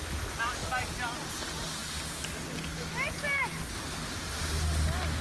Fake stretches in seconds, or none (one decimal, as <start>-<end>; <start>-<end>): none